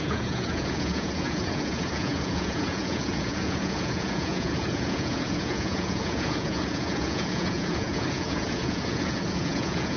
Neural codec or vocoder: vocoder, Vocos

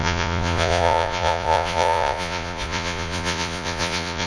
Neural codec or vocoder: vocoder, Vocos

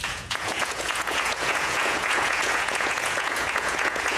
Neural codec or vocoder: vocoder, Vocos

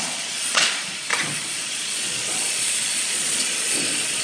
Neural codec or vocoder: vocoder, Vocos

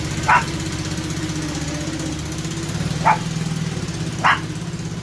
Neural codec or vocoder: none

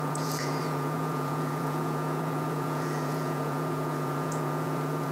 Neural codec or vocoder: vocoder, Vocos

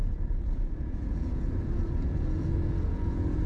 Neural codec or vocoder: vocoder, Vocos